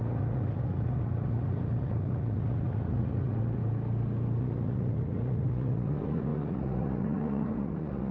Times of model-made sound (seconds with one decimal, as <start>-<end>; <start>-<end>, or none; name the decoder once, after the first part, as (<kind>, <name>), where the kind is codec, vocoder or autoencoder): 0.0-3.6 (vocoder, Vocos); 4.4-8.1